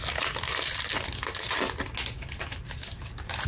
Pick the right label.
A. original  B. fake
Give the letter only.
A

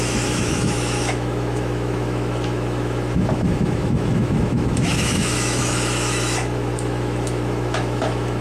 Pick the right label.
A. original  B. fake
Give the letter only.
B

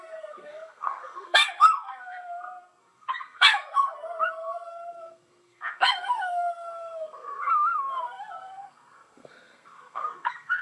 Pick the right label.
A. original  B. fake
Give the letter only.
B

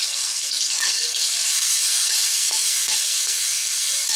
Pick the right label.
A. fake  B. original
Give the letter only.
A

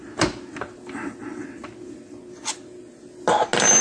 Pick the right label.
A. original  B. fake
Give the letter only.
A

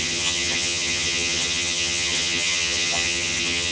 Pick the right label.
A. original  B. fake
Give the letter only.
B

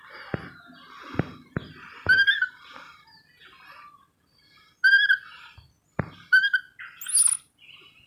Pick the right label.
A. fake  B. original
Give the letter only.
B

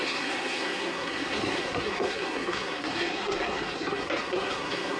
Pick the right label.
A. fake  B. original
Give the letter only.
A